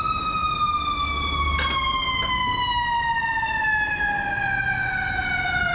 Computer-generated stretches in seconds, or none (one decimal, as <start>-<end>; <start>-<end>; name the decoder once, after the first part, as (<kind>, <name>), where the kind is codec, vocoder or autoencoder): 5.2-5.7 (vocoder, BigVGAN v2)